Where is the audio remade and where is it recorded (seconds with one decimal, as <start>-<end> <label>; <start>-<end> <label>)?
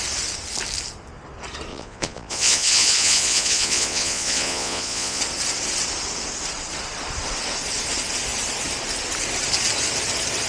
0.0-1.7 recorded; 1.7-5.2 remade; 5.2-10.5 recorded